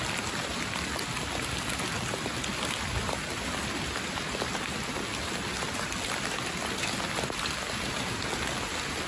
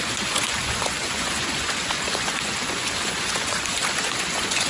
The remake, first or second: second